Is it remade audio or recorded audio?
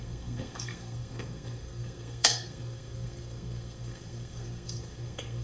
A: remade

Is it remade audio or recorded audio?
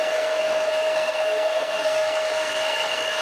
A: remade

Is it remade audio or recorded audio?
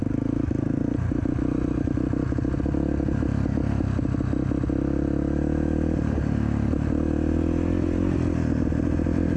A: recorded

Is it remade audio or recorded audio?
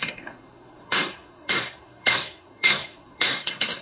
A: remade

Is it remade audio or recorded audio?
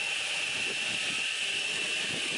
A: recorded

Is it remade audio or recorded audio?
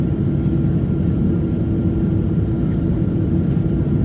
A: recorded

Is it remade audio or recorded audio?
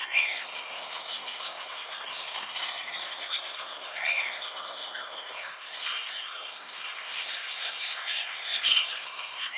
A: remade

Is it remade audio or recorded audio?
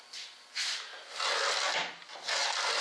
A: recorded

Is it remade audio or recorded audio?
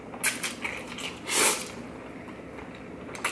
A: recorded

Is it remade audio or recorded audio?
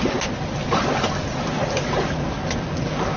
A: recorded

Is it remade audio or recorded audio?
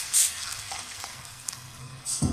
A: remade